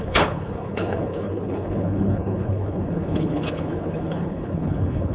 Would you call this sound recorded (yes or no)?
no